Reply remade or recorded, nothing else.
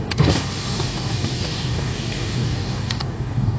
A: remade